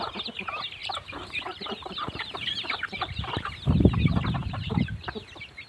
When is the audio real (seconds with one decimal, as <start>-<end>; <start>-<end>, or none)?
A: 0.0-0.8; 3.4-4.4; 5.1-5.7